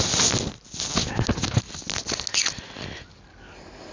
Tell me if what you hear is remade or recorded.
recorded